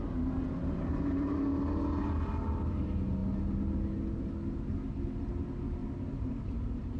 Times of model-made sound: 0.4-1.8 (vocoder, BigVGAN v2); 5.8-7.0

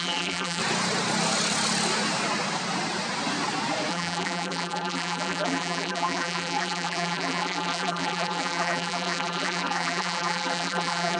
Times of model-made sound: 0.0-0.6 (vocoder, BigVGAN v2); 3.9-11.2

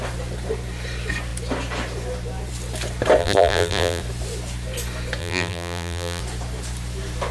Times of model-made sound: 3.2-4.0 (vocoder, BigVGAN v2); 5.2-6.2

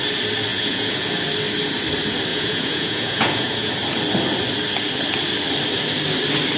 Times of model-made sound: 0.5-1.0 (vocoder, Vocos); 2.3-3.7

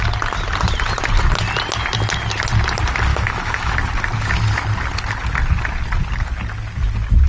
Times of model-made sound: 3.1-3.7 (autoencoder, DAC-VAE)

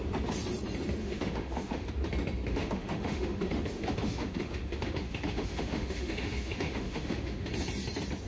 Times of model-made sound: 1.0-1.9 (autoencoder, DAC-VAE); 2.5-7.5

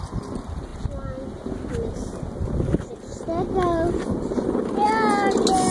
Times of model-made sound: 4.1-4.9 (vocoder, BigVGAN v2)

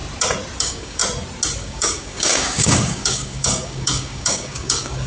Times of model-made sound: 0.6-1.0 (codec, DAC); 1.6-5.1